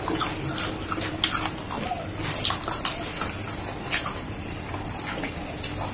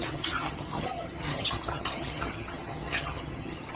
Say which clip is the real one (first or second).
first